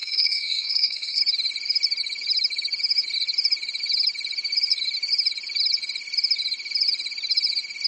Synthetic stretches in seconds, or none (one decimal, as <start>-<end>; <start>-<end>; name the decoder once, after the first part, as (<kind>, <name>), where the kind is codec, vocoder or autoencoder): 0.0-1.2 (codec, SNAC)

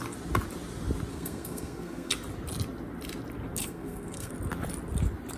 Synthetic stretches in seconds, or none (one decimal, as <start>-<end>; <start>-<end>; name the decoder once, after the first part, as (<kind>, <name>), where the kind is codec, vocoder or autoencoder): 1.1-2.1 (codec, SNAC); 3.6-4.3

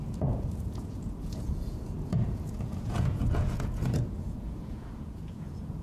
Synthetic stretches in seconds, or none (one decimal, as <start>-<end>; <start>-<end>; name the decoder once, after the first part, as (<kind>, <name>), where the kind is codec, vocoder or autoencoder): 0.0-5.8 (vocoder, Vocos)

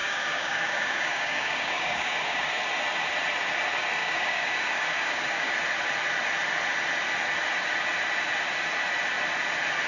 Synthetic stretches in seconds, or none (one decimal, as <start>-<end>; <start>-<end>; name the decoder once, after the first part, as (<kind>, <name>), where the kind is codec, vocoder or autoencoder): 0.0-2.5 (codec, DAC); 4.0-5.5

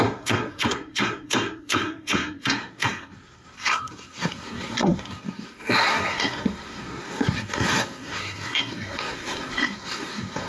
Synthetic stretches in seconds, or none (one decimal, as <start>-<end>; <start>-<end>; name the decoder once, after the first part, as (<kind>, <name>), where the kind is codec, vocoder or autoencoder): 0.0-10.5 (codec, SNAC)